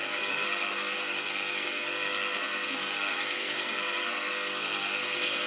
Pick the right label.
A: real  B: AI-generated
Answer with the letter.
B